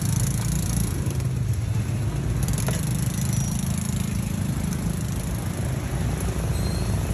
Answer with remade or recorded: recorded